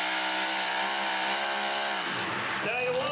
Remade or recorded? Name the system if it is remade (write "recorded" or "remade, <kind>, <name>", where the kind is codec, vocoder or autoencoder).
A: recorded